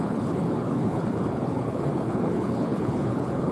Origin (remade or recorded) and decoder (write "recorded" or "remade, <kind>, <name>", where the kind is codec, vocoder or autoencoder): remade, codec, HILCodec